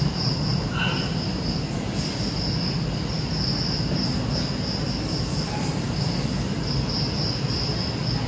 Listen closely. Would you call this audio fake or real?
real